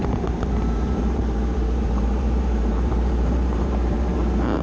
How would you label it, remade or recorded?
remade